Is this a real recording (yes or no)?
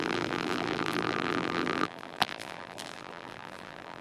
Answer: no